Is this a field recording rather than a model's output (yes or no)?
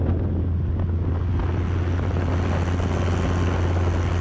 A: yes